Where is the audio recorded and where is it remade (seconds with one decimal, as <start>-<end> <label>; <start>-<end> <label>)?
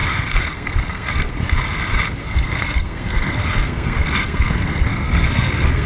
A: 0.0-1.4 remade; 1.4-2.2 recorded; 2.2-5.9 remade